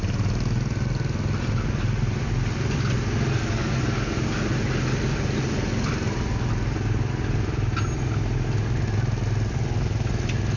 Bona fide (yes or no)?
yes